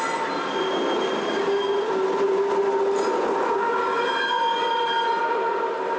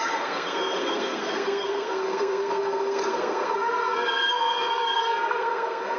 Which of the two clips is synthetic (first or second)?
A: second